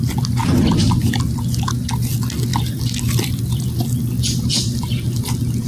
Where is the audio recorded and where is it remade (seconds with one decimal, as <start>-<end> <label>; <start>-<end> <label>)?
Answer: 0.0-5.7 recorded